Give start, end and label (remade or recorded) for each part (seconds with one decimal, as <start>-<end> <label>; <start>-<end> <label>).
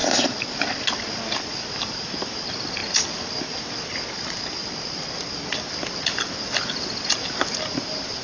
0.0-8.2 recorded